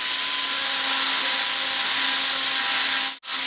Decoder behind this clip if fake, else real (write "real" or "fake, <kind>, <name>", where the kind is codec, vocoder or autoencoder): real